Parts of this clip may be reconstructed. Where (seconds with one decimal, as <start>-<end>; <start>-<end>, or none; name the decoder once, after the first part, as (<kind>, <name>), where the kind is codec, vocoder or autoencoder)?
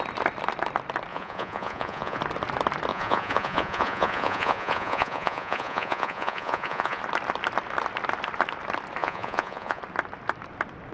1.1-2.2 (vocoder, Vocos); 2.9-7.0; 9.0-9.8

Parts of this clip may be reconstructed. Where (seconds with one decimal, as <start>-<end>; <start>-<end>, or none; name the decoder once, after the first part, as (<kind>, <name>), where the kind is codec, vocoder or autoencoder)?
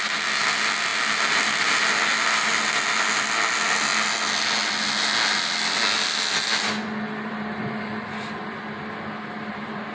none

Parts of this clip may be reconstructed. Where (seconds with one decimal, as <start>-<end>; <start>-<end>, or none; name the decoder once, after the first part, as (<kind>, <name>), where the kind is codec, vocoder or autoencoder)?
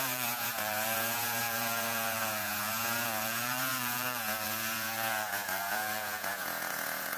0.0-7.2 (vocoder, Vocos)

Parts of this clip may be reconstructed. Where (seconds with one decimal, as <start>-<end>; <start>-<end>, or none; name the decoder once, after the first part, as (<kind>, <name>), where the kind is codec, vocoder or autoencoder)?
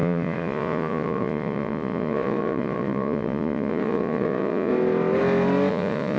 0.0-4.7 (vocoder, Vocos); 5.7-6.2